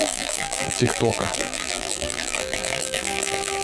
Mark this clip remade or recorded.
remade